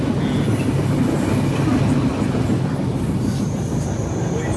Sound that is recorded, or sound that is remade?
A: recorded